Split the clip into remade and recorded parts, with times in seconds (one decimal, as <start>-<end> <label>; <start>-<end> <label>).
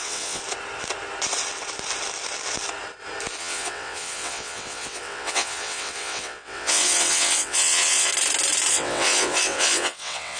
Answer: 0.0-0.4 remade; 0.4-3.4 recorded; 3.4-8.1 remade; 8.1-8.7 recorded; 8.7-10.4 remade